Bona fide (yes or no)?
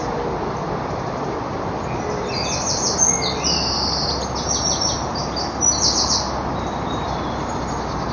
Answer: yes